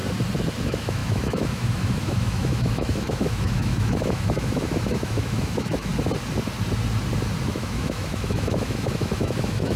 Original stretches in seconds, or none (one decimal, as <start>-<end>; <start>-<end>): 0.0-0.6; 5.9-7.5